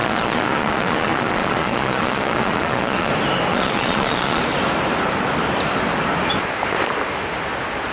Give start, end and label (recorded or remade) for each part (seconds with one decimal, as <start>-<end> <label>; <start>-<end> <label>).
0.0-3.1 remade; 3.1-3.5 recorded; 3.5-4.4 remade; 4.4-7.9 recorded